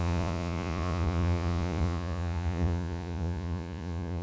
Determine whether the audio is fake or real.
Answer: fake